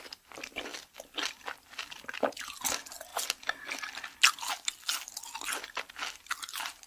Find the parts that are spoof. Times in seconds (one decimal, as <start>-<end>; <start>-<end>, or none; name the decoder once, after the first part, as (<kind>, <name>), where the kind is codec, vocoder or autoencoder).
none